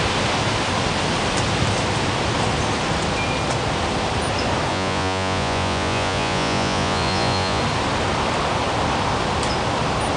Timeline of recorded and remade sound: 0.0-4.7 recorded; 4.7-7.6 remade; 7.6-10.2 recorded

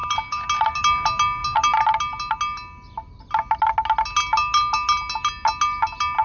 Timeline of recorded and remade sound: 0.0-6.2 recorded

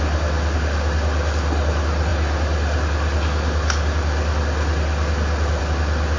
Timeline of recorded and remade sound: 0.0-6.2 recorded

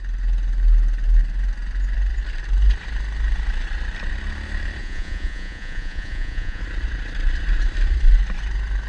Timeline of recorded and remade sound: 0.0-4.8 recorded; 4.8-6.6 remade; 6.6-8.9 recorded

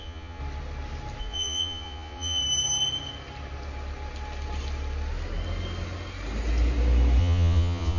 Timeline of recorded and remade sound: 0.0-0.4 remade; 0.4-1.2 recorded; 1.2-2.4 remade; 2.4-7.2 recorded; 7.2-8.0 remade

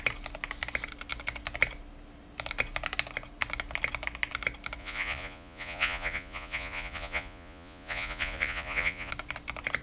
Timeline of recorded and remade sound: 0.0-4.8 recorded; 4.8-9.1 remade; 9.1-9.8 recorded

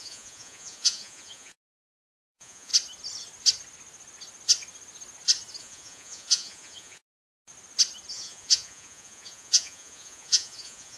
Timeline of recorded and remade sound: 0.0-2.7 remade; 2.7-5.6 recorded; 5.6-7.2 remade; 7.2-8.1 recorded; 8.1-11.0 remade